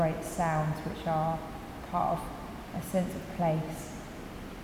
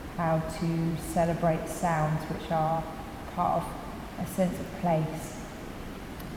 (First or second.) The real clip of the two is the first